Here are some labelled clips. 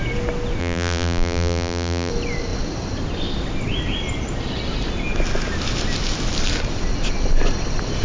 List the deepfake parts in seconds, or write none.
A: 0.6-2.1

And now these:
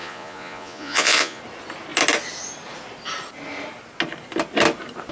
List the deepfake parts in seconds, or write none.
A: 0.0-1.4

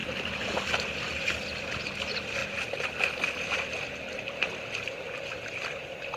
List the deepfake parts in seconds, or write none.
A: none